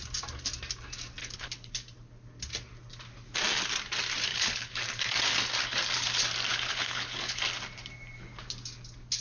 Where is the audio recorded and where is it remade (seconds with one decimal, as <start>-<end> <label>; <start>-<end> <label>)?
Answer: 0.0-1.2 recorded; 1.2-1.7 remade; 1.7-4.3 recorded; 4.3-4.8 remade; 4.8-6.5 recorded; 6.5-7.4 remade; 7.4-9.2 recorded